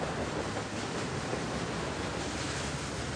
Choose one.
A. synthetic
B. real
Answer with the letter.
B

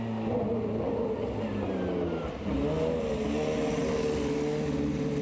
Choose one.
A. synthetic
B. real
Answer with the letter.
B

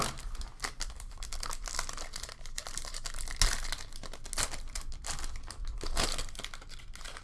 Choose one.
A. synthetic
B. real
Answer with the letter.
B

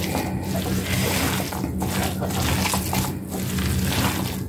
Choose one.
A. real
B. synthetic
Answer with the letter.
A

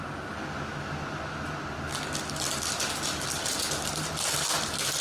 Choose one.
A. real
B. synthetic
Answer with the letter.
A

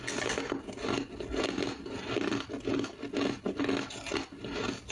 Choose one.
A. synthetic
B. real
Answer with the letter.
B